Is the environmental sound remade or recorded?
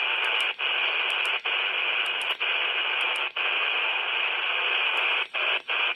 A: recorded